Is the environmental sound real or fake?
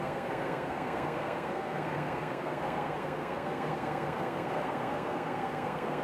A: fake